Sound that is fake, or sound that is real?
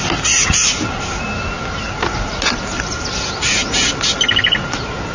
real